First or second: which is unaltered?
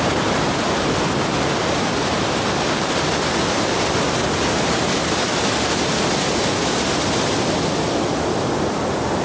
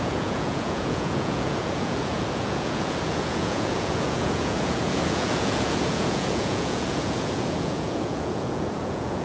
first